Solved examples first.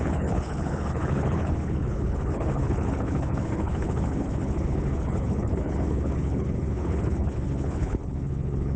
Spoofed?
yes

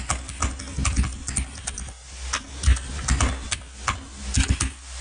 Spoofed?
no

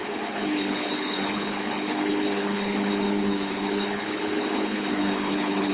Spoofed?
yes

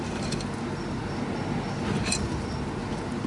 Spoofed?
no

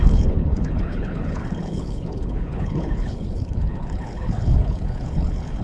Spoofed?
yes